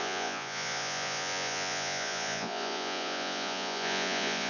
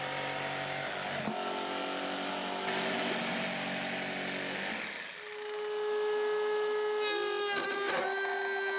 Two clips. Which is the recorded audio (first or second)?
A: second